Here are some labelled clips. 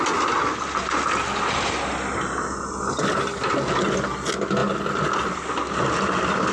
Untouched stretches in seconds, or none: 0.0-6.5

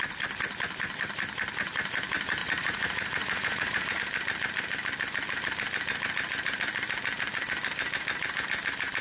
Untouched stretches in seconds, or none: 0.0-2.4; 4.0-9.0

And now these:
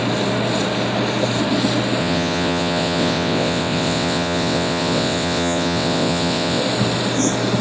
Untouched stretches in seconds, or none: 0.0-2.0; 6.6-7.6

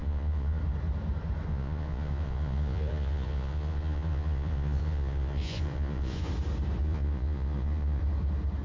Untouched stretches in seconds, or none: 0.6-1.5; 6.3-6.8; 8.0-8.6

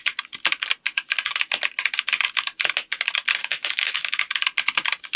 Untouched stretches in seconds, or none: 0.0-3.4; 4.2-5.2